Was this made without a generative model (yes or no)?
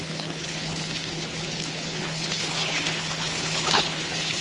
no